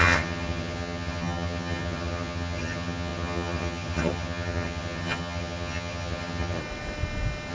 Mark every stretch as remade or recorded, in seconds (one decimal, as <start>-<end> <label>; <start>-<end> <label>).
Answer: 0.0-6.6 remade; 6.6-7.5 recorded